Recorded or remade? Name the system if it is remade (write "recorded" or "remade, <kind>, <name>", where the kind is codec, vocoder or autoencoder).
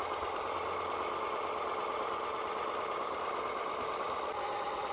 recorded